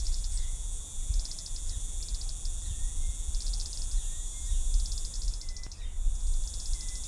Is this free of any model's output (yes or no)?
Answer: yes